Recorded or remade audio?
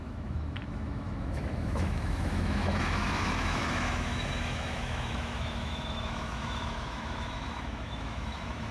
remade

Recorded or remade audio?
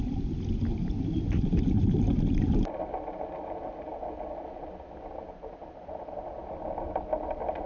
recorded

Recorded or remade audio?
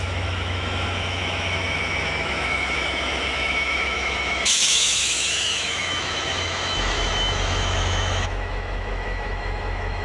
remade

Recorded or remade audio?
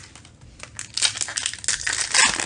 recorded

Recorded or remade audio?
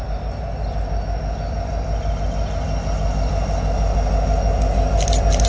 recorded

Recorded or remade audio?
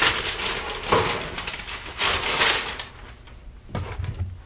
recorded